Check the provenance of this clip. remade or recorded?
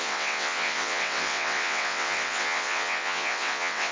remade